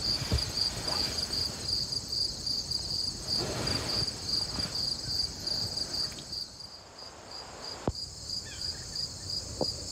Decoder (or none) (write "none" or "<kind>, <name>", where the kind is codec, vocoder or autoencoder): none